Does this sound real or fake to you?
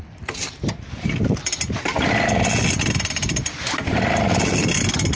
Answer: real